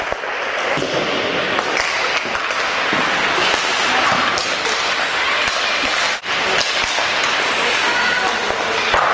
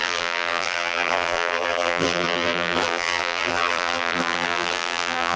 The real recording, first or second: first